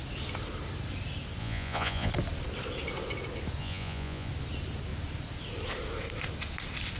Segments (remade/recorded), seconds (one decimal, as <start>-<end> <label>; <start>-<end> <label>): 0.0-1.4 recorded; 1.4-2.1 remade; 2.1-3.6 recorded; 3.6-4.3 remade; 4.3-7.0 recorded